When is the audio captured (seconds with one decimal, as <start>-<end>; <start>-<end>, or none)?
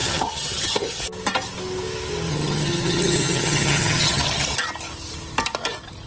1.0-2.3; 4.2-6.1